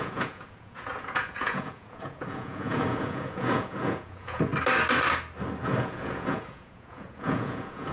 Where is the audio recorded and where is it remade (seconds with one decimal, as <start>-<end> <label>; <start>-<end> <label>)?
0.0-4.5 remade; 4.5-5.6 recorded; 5.6-7.9 remade

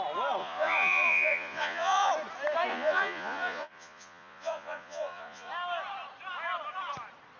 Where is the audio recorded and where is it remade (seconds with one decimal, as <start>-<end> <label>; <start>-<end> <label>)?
0.0-0.4 recorded; 0.4-2.1 remade; 2.1-2.7 recorded; 2.7-5.5 remade; 5.5-7.4 recorded

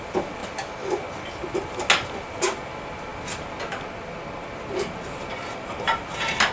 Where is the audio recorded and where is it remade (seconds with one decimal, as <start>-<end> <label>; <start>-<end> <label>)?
0.0-6.5 recorded

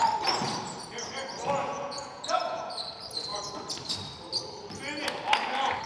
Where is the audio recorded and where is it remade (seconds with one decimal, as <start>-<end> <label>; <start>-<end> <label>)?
0.0-1.6 recorded; 1.6-2.7 remade; 2.7-5.9 recorded

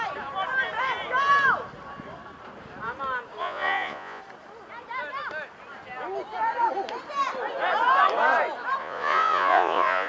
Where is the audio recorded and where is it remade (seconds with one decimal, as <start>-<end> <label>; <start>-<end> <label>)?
0.0-3.4 recorded; 3.4-4.2 remade; 4.2-8.8 recorded; 8.8-10.1 remade

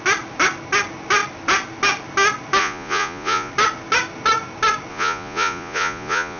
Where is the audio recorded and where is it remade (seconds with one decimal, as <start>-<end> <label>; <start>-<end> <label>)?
0.0-2.6 recorded; 2.6-3.5 remade; 3.5-4.9 recorded; 4.9-6.4 remade

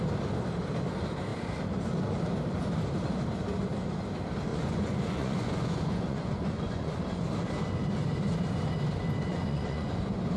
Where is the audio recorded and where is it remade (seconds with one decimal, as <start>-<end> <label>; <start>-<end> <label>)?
0.0-4.5 recorded; 4.5-7.0 remade; 7.0-9.3 recorded; 9.3-10.0 remade; 10.0-10.4 recorded